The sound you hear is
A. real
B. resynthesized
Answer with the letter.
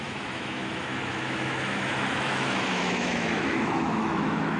B